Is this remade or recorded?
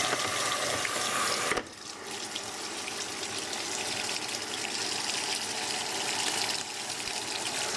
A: recorded